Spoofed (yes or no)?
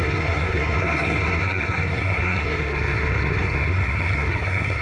yes